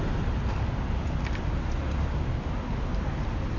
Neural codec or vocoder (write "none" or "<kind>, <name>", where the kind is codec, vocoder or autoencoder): none